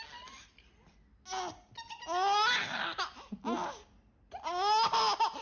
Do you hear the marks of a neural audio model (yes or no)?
no